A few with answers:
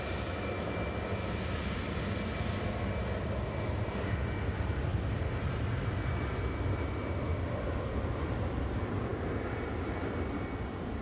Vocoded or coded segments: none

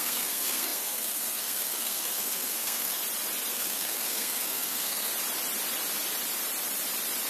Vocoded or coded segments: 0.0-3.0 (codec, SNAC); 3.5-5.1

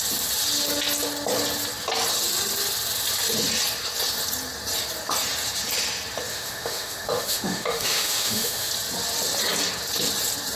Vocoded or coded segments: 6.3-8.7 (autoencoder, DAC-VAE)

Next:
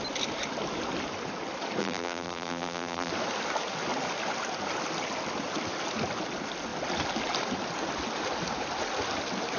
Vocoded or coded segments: 1.8-3.1 (vocoder, BigVGAN v2)

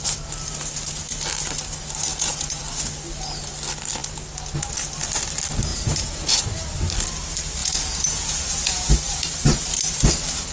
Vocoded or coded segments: 2.1-2.6 (vocoder, Vocos); 5.7-6.4; 7.6-8.9

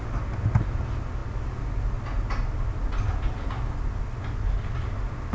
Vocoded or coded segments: none